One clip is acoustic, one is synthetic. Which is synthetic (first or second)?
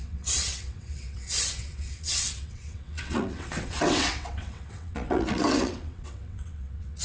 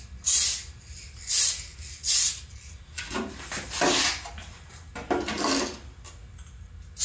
first